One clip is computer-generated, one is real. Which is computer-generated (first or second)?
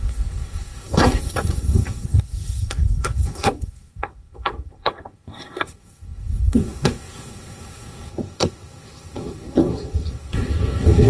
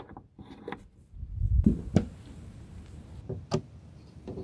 first